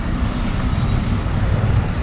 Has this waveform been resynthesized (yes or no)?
no